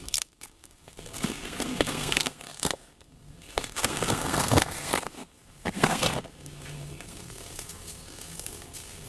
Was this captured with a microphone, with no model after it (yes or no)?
no